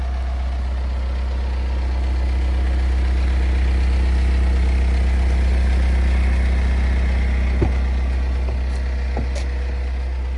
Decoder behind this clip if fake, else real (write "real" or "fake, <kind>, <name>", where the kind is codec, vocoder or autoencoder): real